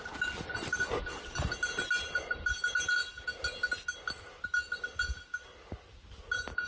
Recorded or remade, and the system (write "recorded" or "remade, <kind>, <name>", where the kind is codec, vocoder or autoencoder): recorded